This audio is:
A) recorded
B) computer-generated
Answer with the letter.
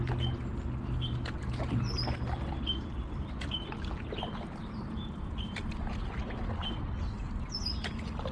A